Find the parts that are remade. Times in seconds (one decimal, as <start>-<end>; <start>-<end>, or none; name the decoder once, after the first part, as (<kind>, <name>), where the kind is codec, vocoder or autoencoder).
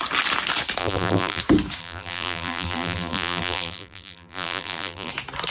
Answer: 0.8-1.4 (vocoder, BigVGAN v2); 1.8-5.1